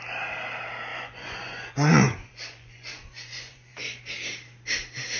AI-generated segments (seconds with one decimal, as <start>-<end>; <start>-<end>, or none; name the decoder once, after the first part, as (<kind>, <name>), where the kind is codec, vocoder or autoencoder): 0.9-4.0 (vocoder, Vocos)